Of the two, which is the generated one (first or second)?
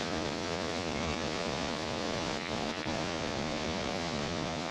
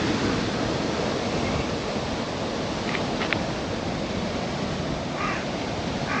first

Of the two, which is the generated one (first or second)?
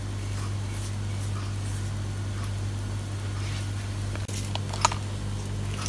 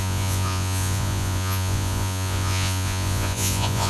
second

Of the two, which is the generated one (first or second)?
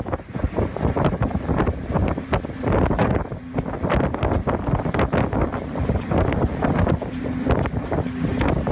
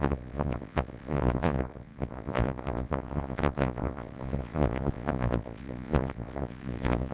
second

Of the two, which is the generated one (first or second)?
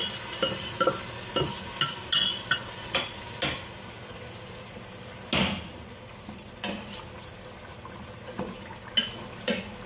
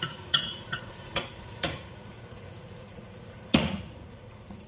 second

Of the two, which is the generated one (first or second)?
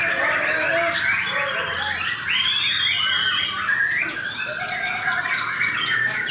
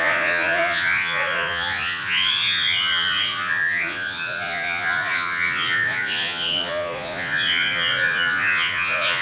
second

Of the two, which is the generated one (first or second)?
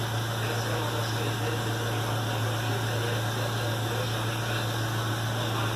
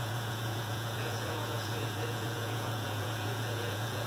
second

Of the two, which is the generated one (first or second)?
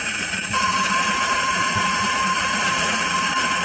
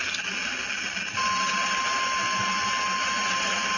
first